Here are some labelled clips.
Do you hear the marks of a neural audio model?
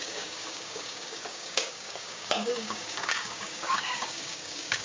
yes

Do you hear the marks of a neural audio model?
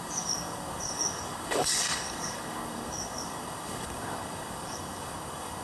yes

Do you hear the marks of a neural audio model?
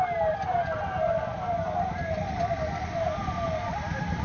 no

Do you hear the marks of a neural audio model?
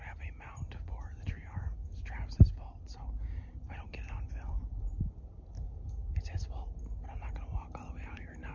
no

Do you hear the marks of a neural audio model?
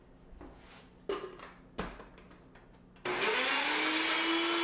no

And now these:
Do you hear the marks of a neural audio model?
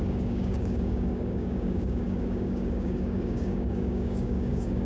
yes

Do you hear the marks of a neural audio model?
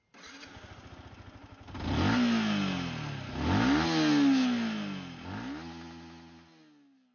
no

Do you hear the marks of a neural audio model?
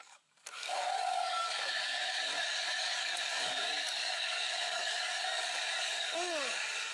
yes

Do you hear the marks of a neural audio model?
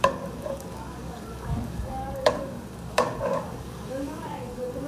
yes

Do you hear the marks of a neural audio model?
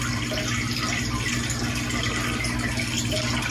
no